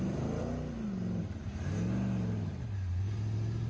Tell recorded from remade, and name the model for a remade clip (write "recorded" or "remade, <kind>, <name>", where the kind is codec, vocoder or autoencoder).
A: recorded